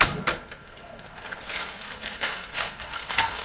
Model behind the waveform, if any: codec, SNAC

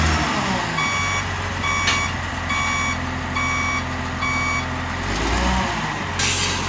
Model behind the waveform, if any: none